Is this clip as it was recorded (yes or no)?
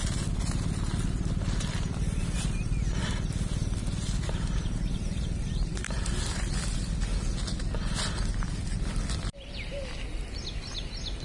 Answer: yes